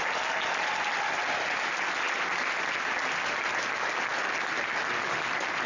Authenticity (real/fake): real